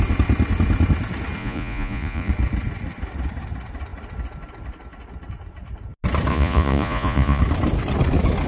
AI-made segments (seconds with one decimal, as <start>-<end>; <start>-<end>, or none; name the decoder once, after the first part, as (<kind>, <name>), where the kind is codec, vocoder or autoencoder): 1.4-2.3 (vocoder, Vocos); 6.3-7.4